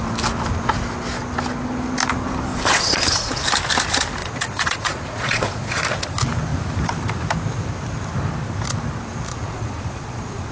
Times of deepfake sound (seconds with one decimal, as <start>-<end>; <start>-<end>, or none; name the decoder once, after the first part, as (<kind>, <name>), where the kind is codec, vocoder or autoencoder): 2.5-3.4 (vocoder, Vocos); 4.2-5.8; 9.3-10.5

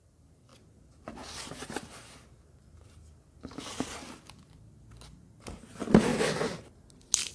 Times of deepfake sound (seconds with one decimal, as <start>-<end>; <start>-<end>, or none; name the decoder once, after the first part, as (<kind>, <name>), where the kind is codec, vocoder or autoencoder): none